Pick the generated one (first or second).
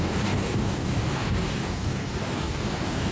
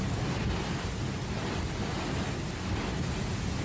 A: first